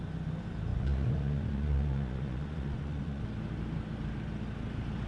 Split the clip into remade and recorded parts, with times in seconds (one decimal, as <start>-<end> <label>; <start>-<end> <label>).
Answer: 0.0-0.7 recorded; 0.7-3.2 remade; 3.2-5.1 recorded